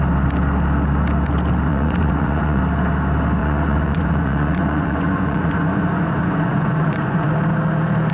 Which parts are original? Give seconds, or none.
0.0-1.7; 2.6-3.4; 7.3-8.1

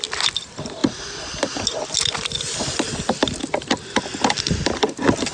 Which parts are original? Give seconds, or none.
0.0-5.3

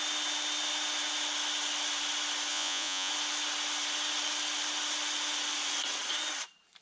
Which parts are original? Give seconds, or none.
0.0-2.5; 3.1-6.8

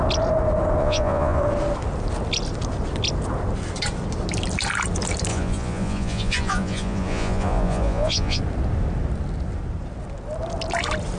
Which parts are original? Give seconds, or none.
0.0-0.8; 1.4-5.3; 8.4-11.2

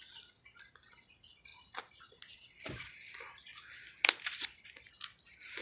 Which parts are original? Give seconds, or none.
0.0-5.6